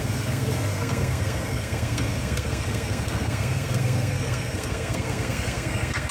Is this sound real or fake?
fake